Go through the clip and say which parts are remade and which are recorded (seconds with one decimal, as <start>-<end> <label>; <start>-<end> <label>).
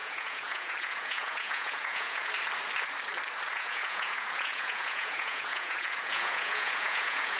0.0-2.3 remade; 2.3-3.5 recorded; 3.5-7.4 remade